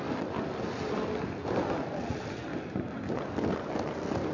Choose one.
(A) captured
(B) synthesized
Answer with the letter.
A